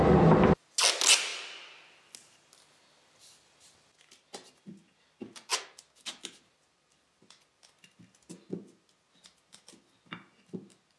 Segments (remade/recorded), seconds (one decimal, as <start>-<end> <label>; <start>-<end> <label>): 0.0-11.0 recorded